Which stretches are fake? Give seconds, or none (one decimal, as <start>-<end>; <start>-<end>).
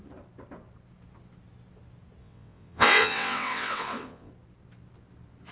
2.2-4.3